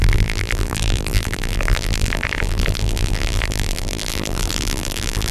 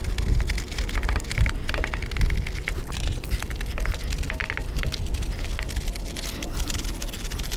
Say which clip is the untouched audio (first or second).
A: second